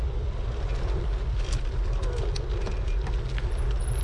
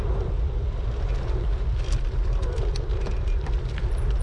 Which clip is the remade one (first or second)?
second